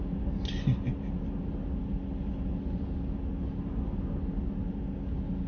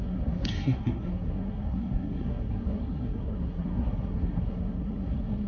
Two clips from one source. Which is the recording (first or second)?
first